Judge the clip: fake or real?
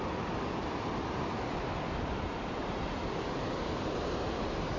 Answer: real